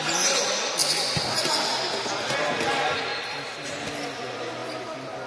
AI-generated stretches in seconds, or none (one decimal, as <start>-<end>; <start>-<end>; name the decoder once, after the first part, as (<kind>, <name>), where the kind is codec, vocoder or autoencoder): 3.1-3.7 (vocoder, BigVGAN v2)